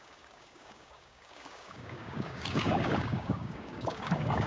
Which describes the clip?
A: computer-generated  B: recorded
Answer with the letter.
A